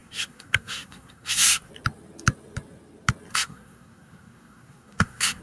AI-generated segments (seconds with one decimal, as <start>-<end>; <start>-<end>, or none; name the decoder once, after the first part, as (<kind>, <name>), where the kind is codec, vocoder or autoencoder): 0.0-1.7 (codec, SNAC); 3.3-5.4